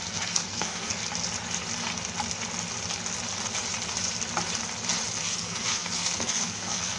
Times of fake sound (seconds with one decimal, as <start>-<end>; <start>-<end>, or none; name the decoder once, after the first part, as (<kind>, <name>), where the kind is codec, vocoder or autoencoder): 0.0-1.0 (codec, SNAC); 5.2-7.0